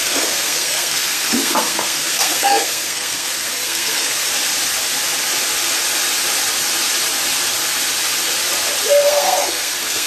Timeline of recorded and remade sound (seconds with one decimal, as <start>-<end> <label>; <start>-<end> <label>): 0.0-4.3 remade; 4.3-8.9 recorded; 8.9-10.1 remade